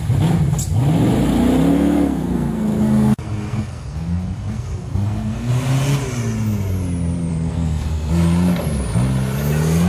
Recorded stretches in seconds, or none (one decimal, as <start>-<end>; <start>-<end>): 0.0-1.7; 5.5-7.3; 8.1-9.9